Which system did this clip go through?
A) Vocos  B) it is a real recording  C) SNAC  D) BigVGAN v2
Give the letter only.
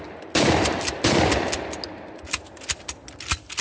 B